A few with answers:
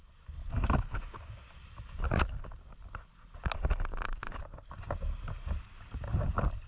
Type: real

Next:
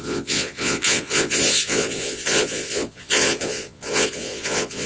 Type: fake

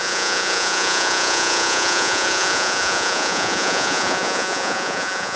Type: fake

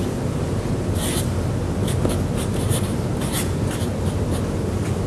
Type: real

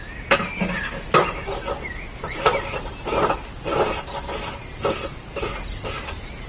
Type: real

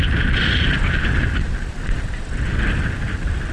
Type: real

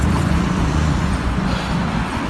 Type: fake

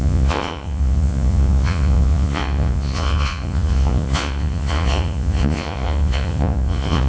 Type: fake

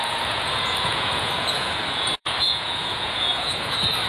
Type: fake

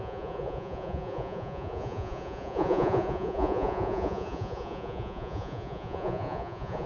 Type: fake